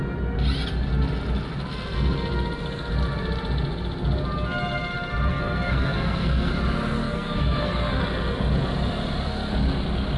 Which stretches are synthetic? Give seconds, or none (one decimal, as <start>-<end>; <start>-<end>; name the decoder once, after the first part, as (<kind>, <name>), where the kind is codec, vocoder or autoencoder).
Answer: 5.3-6.5 (codec, SNAC); 7.0-8.0